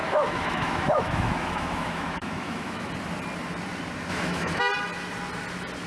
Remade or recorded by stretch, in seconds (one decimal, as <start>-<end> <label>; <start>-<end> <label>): 0.0-2.9 remade; 2.9-4.1 recorded; 4.1-4.6 remade; 4.6-5.9 recorded